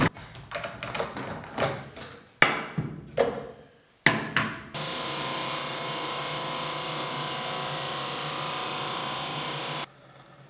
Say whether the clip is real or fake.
real